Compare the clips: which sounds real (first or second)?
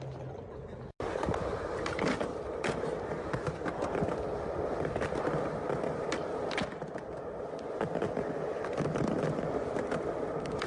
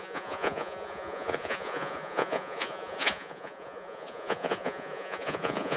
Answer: first